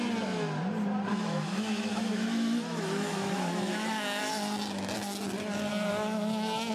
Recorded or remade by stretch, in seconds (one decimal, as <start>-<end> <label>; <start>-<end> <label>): 0.0-1.1 recorded; 1.1-4.2 remade; 4.2-5.7 recorded; 5.7-6.7 remade

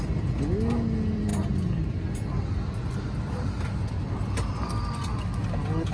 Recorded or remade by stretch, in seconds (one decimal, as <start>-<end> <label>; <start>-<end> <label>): 0.0-5.9 recorded

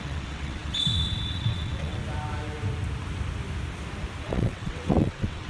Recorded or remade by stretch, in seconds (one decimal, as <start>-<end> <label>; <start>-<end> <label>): 0.0-2.0 remade; 2.0-4.2 recorded; 4.2-5.5 remade

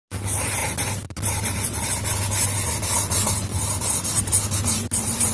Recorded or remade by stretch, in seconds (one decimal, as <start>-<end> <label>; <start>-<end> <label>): 0.0-0.6 recorded; 0.6-2.2 remade; 2.2-5.3 recorded

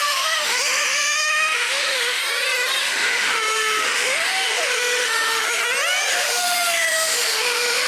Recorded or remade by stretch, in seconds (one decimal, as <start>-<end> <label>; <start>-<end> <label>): 0.0-2.2 remade; 2.2-2.8 recorded; 2.8-5.6 remade; 5.6-6.1 recorded; 6.1-7.9 remade

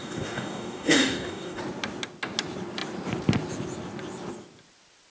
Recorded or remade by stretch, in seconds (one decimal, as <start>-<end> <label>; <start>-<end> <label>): 0.0-1.6 remade; 1.6-5.1 recorded

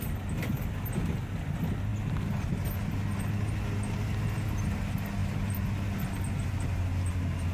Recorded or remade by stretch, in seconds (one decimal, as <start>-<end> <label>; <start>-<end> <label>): 0.0-7.5 recorded